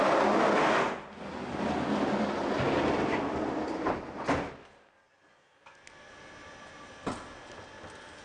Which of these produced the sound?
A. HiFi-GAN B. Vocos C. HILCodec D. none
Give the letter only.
D